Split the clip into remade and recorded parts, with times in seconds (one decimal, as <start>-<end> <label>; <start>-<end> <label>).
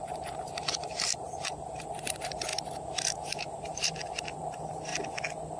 0.0-4.9 remade; 4.9-5.6 recorded